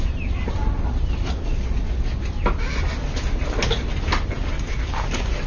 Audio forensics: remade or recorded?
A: recorded